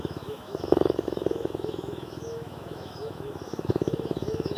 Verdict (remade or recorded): remade